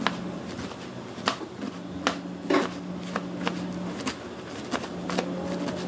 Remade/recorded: recorded